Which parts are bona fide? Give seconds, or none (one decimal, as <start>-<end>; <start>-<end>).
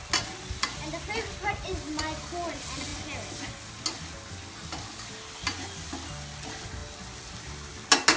0.0-8.2